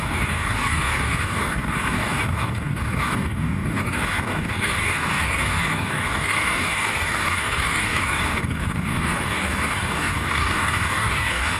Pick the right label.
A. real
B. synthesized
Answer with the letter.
B